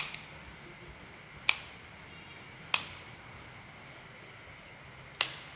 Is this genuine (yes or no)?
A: yes